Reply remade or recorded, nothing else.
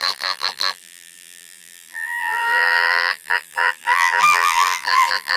remade